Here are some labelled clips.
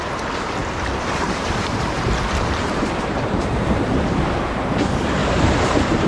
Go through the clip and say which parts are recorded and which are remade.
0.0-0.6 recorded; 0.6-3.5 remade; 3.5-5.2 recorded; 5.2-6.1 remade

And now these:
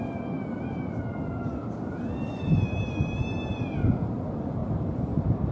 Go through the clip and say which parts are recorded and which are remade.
0.0-4.6 recorded; 4.6-5.5 remade

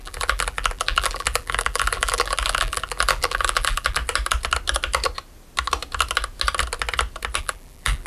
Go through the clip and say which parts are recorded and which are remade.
0.0-4.0 remade; 4.0-7.4 recorded; 7.4-8.1 remade

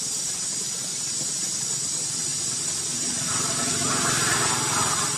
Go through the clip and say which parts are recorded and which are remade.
0.0-2.3 recorded; 2.3-4.5 remade; 4.5-5.2 recorded

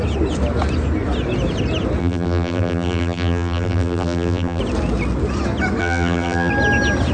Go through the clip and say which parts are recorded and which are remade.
0.0-2.0 recorded; 2.0-4.6 remade; 4.6-5.8 recorded; 5.8-6.5 remade; 6.5-7.1 recorded

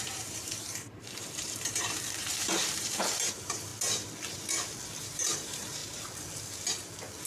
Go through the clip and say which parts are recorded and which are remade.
0.0-3.7 remade; 3.7-5.0 recorded; 5.0-5.8 remade; 5.8-7.3 recorded

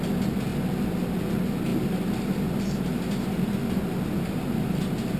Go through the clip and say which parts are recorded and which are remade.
0.0-5.2 recorded